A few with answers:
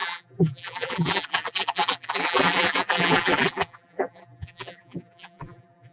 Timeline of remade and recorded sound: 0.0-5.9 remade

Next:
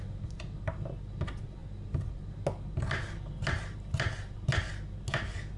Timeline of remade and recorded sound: 0.0-5.6 recorded